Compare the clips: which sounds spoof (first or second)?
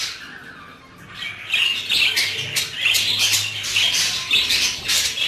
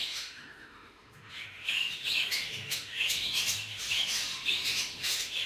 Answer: second